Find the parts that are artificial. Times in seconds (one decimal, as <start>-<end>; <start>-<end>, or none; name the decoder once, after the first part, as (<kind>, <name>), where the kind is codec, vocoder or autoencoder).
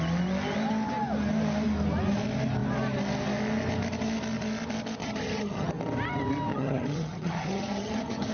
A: 5.0-5.7 (vocoder, HiFi-GAN); 6.5-8.3